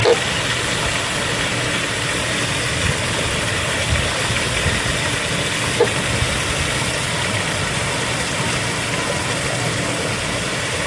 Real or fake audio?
real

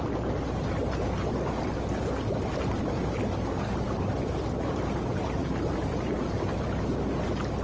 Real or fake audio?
real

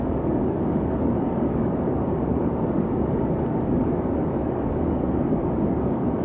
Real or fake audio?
fake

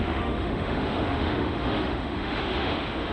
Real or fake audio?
fake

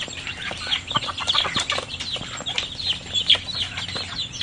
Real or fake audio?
real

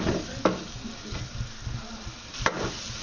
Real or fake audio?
real